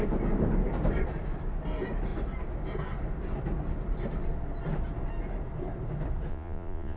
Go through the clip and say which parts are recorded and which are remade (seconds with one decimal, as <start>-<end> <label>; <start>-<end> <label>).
0.0-6.3 recorded; 6.3-7.0 remade